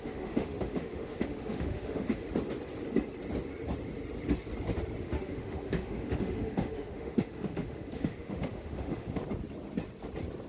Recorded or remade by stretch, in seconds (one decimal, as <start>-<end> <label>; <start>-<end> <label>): 0.0-2.2 remade; 2.2-5.0 recorded; 5.0-9.2 remade; 9.2-10.5 recorded

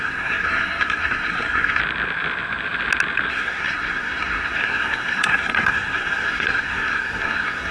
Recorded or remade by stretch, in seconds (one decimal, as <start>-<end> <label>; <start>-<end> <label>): 0.0-1.8 remade; 1.8-3.3 recorded; 3.3-7.7 remade

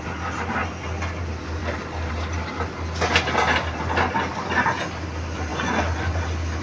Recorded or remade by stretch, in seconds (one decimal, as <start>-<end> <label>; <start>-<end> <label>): 0.0-6.6 recorded

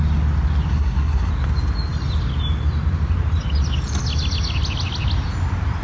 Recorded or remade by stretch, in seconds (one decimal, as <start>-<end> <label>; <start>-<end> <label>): 0.0-0.7 recorded; 0.7-1.3 remade; 1.3-5.8 recorded